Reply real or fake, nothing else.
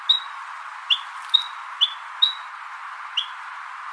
real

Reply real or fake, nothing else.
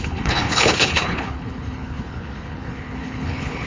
fake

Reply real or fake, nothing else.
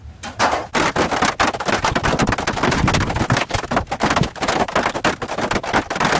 real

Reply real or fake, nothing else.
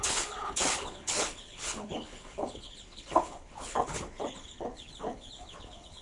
fake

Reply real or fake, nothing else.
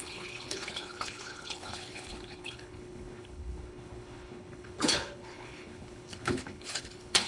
fake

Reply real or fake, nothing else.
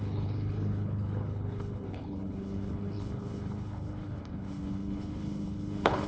fake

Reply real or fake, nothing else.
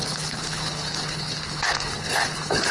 fake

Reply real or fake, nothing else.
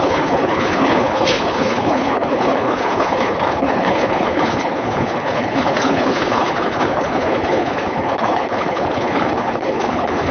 fake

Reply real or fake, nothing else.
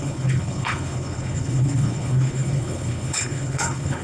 fake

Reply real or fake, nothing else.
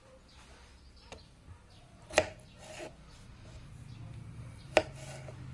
real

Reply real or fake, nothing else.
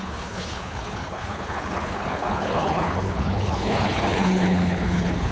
fake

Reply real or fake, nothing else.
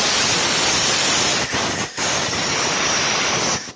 real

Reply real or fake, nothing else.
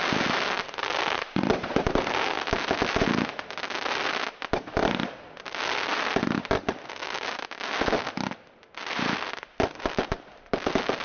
real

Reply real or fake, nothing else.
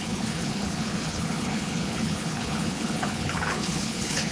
fake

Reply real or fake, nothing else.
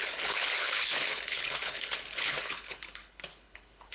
fake